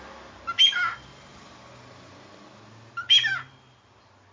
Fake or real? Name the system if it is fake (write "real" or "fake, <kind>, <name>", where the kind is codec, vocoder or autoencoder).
real